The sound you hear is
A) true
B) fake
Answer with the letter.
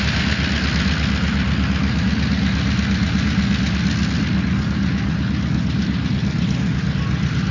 A